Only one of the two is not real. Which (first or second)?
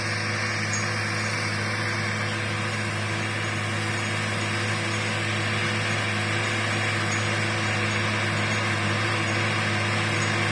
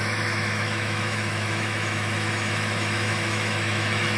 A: second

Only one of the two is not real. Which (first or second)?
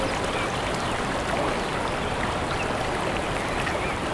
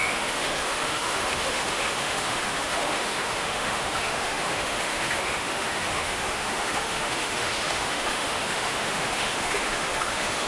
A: second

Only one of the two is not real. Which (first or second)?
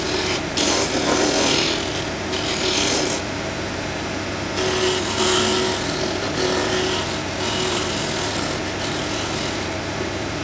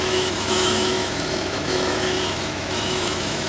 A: second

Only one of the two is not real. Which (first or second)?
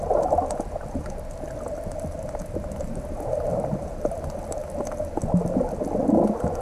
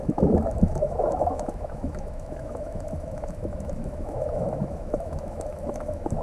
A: second